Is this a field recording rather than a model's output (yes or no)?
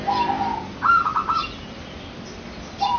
yes